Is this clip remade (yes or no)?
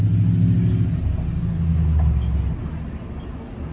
no